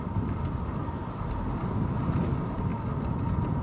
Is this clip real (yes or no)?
yes